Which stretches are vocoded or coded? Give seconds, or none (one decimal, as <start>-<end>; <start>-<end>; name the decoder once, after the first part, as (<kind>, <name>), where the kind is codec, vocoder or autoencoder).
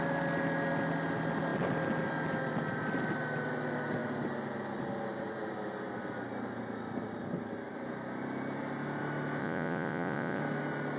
9.4-10.4 (vocoder, Vocos)